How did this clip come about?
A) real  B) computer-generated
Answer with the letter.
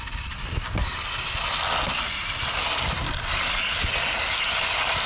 A